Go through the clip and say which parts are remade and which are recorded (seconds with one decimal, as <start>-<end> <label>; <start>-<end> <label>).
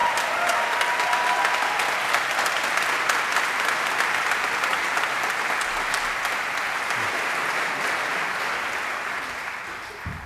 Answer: 0.0-4.7 recorded; 4.7-5.3 remade; 5.3-10.3 recorded